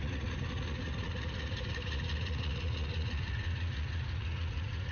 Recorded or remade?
remade